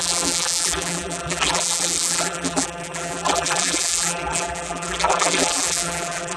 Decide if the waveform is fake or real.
fake